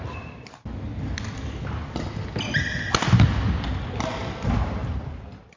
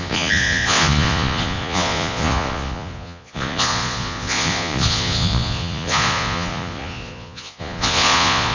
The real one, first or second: first